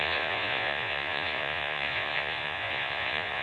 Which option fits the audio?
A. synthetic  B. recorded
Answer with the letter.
A